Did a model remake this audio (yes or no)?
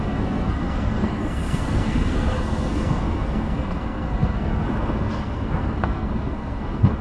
yes